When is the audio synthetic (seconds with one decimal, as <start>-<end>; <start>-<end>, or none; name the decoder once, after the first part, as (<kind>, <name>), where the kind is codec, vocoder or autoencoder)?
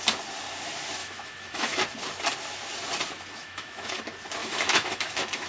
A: 1.0-1.8 (autoencoder, DAC-VAE); 3.4-4.0; 4.4-5.5